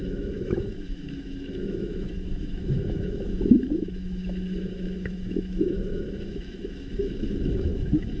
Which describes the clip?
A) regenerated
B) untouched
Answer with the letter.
A